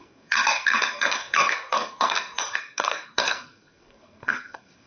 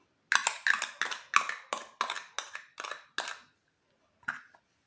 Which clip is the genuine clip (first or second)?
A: second